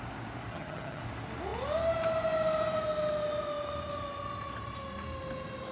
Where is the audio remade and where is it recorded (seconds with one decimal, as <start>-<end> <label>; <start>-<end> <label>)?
0.0-0.5 recorded; 0.5-1.0 remade; 1.0-5.7 recorded